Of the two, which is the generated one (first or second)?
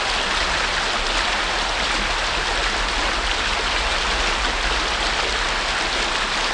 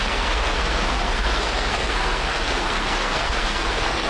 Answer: second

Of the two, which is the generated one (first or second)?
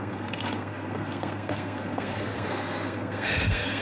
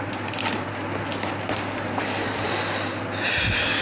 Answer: first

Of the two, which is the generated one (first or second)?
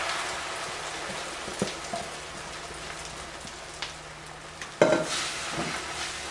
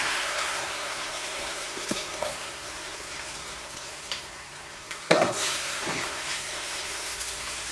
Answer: second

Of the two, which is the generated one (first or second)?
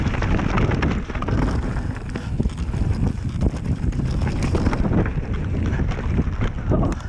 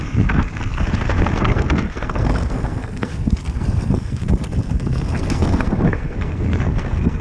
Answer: second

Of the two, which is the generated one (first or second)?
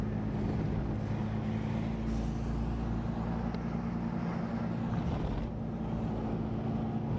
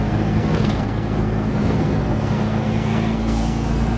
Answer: second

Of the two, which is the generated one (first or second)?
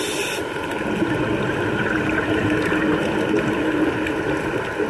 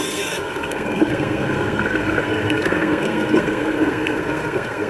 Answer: second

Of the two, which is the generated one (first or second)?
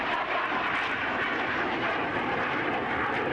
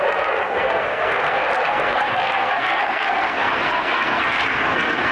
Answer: second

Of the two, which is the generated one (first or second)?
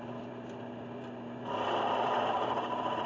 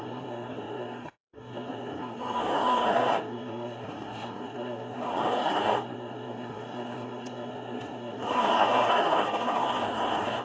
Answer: second